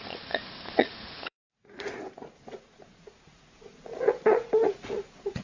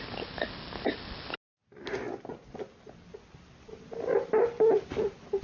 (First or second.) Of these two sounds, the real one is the second